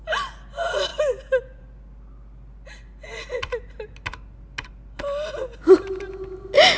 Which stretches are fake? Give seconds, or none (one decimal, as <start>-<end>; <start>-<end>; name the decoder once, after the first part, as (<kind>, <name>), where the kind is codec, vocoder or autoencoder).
none